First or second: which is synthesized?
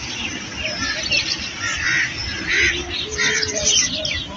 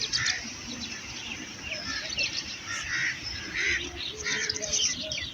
second